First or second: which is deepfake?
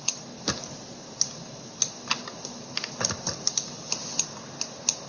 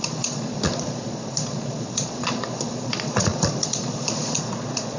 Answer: second